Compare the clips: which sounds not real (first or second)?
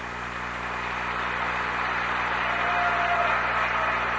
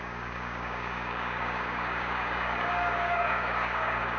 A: second